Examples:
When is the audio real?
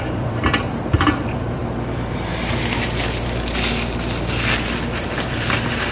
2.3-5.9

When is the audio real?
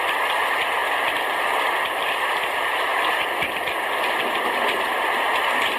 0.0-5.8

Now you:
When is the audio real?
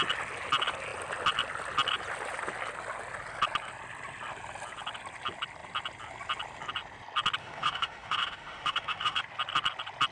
0.0-7.4; 9.2-10.1